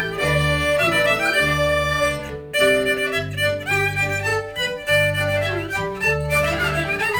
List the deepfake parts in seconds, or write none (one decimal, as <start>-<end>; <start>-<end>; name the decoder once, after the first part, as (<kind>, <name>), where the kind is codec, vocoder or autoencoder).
4.3-7.2 (autoencoder, DAC-VAE)